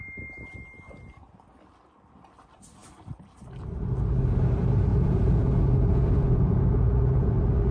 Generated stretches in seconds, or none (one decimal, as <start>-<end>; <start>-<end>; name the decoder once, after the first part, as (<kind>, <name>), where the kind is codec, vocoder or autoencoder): 4.9-7.3 (vocoder, Vocos)